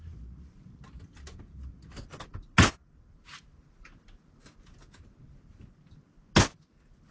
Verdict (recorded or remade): recorded